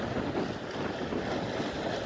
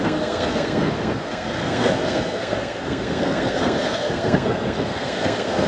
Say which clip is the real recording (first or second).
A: first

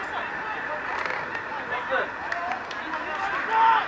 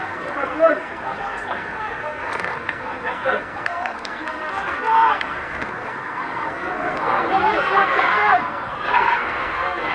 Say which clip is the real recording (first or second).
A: first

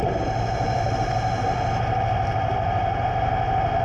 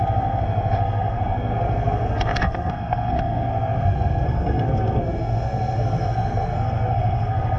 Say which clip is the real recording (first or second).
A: first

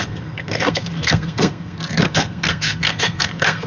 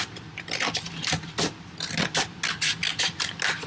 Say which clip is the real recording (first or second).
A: second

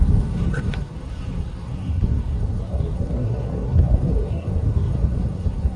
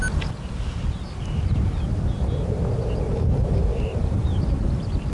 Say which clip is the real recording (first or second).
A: second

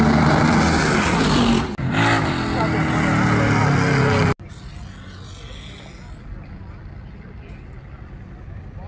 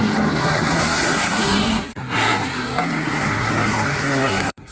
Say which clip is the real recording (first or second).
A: first